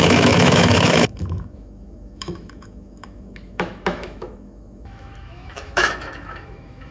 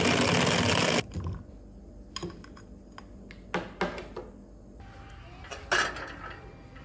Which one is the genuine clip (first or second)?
second